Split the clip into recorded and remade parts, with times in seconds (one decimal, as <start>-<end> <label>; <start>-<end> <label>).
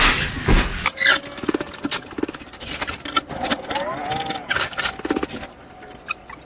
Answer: 0.0-6.4 recorded